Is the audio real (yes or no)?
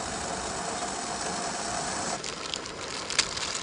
yes